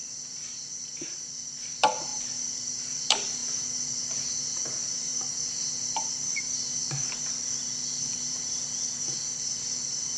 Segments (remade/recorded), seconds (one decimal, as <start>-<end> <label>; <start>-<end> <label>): 0.0-3.4 remade; 3.4-4.4 recorded; 4.4-5.1 remade; 5.1-5.6 recorded; 5.6-6.8 remade; 6.8-8.3 recorded; 8.3-10.2 remade